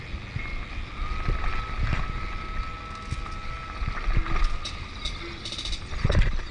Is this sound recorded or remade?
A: recorded